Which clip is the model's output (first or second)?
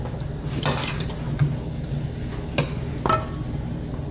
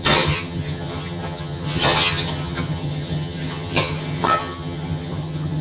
second